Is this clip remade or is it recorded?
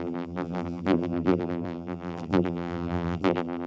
remade